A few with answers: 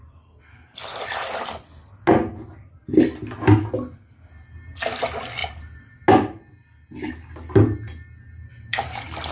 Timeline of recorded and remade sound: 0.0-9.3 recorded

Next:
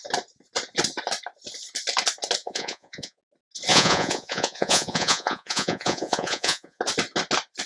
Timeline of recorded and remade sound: 0.0-2.4 recorded; 2.4-3.2 remade; 3.2-3.7 recorded; 3.7-6.8 remade; 6.8-7.7 recorded

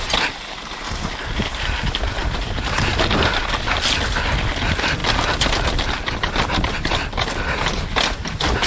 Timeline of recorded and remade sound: 0.0-8.7 recorded

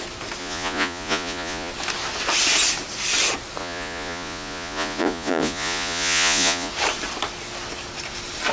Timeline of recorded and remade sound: 0.0-0.4 recorded; 0.4-1.7 remade; 1.7-3.6 recorded; 3.6-6.7 remade; 6.7-8.5 recorded

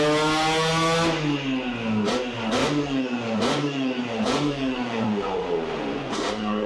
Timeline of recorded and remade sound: 0.0-2.6 recorded; 2.6-6.7 remade